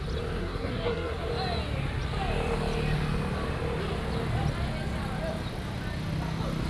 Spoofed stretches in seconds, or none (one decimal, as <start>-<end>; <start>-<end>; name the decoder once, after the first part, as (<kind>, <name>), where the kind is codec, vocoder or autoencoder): 0.4-1.3 (codec, SNAC)